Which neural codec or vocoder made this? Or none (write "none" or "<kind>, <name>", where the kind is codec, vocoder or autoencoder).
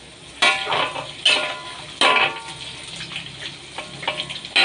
none